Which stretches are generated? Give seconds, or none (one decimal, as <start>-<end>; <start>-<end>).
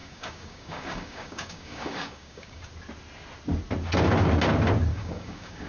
0.0-2.7; 4.9-5.7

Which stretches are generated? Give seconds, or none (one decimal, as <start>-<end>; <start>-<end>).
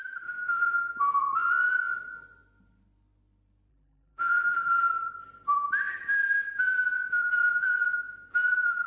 3.7-4.9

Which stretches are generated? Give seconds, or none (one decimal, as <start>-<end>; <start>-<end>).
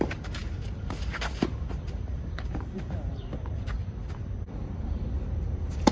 0.0-5.9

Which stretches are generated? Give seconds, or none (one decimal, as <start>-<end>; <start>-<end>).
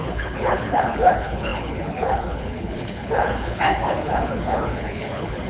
0.0-5.5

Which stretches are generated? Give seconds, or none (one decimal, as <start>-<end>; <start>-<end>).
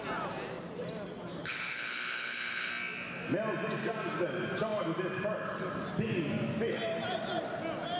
1.4-2.7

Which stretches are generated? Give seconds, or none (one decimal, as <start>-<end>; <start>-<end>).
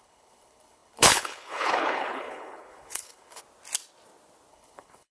0.0-3.4; 4.5-5.1